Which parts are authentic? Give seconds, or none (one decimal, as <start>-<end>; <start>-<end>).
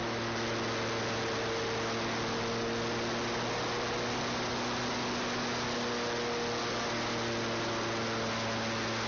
0.0-9.1